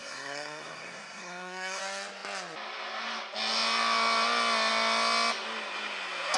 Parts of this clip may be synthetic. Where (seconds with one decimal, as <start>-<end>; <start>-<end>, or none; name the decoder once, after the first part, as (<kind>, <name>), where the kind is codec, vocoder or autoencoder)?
0.0-1.8 (codec, SNAC)